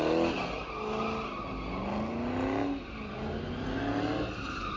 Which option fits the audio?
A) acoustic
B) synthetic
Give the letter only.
A